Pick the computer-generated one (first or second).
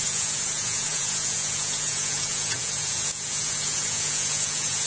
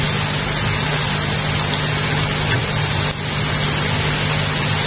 first